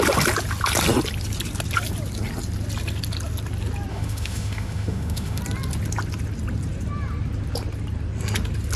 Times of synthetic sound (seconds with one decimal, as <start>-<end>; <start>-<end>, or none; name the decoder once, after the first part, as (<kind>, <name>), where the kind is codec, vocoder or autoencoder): 3.9-5.4 (autoencoder, DAC-VAE)